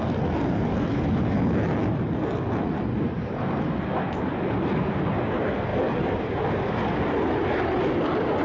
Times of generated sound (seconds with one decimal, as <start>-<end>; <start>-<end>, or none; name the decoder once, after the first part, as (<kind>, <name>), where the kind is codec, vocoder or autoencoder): none